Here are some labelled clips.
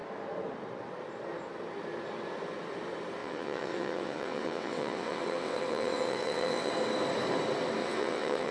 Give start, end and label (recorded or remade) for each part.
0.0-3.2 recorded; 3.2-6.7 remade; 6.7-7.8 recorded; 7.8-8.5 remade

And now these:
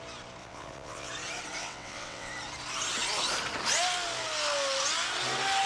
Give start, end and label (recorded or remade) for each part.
0.0-0.4 recorded; 0.4-1.1 remade; 1.1-1.6 recorded; 1.6-2.3 remade; 2.3-5.7 recorded